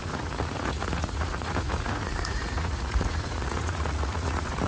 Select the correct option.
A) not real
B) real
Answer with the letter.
A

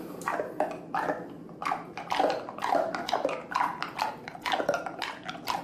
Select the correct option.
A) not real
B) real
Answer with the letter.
B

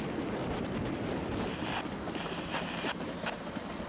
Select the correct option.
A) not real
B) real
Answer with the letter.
B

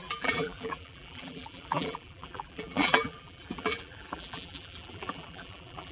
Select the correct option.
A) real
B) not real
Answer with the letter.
B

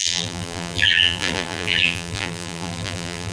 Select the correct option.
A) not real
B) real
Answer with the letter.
A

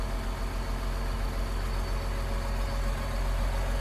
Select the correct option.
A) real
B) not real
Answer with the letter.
A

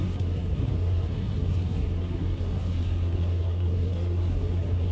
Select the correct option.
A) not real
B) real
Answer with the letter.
A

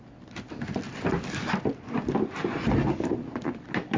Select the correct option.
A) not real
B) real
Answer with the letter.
B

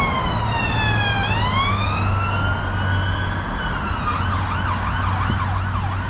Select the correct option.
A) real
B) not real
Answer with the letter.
A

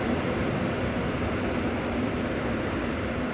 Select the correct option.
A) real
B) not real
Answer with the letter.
A